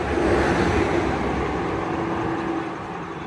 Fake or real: real